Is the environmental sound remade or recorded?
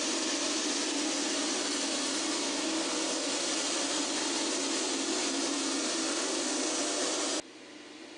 recorded